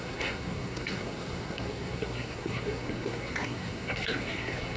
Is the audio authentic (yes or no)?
no